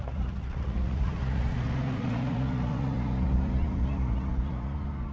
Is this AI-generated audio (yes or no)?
yes